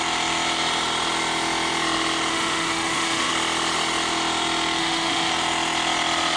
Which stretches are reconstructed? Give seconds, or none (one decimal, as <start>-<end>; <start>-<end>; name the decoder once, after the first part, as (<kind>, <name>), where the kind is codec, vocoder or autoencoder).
2.3-3.3 (autoencoder, DAC-VAE); 4.8-5.3